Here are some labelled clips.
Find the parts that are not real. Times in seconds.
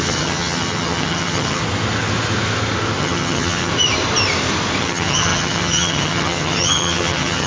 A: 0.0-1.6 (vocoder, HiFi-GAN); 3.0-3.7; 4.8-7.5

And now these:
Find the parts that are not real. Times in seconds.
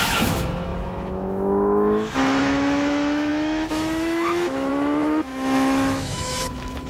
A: 0.0-6.9 (autoencoder, DAC-VAE)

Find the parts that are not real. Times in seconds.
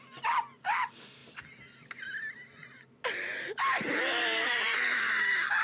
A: none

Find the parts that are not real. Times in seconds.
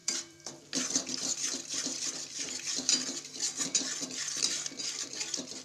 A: 0.0-0.6 (vocoder, BigVGAN v2); 4.2-5.6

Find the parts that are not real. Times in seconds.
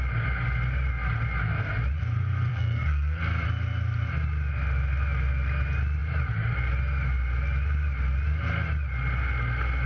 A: 2.5-3.2 (codec, SNAC)